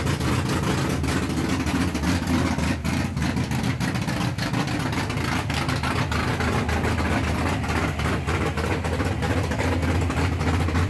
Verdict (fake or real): real